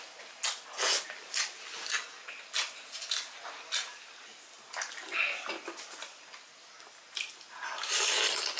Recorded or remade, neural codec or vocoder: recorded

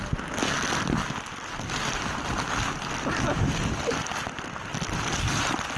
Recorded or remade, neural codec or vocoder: recorded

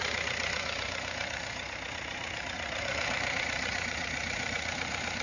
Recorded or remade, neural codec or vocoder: remade, vocoder, Vocos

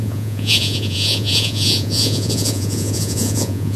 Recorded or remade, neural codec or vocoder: remade, vocoder, Vocos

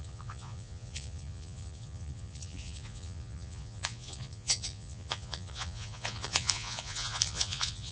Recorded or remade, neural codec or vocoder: remade, vocoder, Vocos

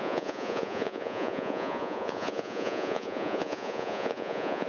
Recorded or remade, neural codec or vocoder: remade, vocoder, Vocos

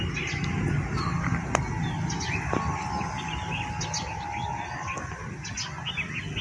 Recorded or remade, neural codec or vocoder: recorded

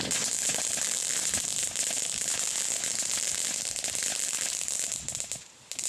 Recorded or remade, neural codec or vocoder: recorded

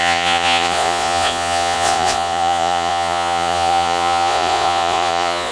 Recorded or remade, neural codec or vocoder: remade, vocoder, Vocos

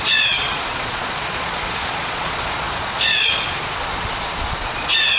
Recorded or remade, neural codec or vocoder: remade, vocoder, Vocos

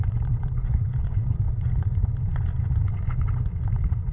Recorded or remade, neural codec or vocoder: remade, vocoder, Vocos